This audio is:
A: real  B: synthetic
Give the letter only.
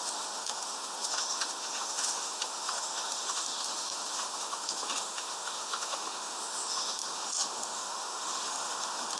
B